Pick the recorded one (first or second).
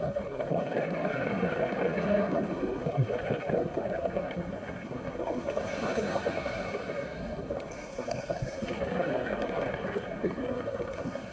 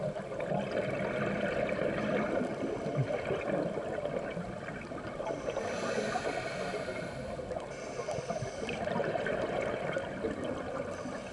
second